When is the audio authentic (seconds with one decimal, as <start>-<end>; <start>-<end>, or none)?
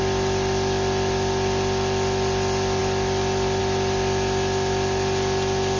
0.0-5.8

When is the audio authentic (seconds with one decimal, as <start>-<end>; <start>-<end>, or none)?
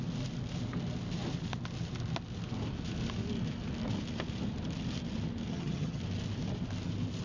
0.0-5.5; 6.0-7.2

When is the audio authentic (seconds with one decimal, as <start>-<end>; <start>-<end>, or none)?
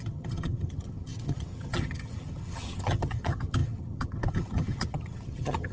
none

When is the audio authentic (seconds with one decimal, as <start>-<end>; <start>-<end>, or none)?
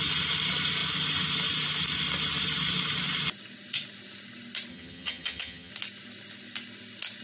0.0-4.7; 5.7-7.2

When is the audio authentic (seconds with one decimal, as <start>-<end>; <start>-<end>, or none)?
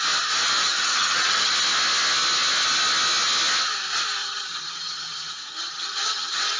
0.0-0.6; 1.5-4.2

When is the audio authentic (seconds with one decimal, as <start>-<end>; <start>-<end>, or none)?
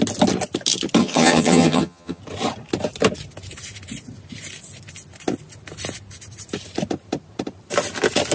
0.0-1.0; 2.2-8.3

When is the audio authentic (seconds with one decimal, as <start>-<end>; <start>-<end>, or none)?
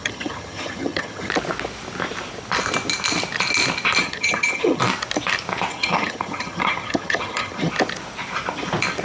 1.3-4.0; 4.8-5.7; 7.7-9.0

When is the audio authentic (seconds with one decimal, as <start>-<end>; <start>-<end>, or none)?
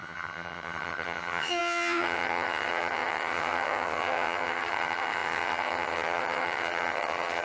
none